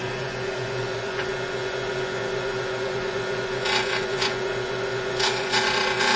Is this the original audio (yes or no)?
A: no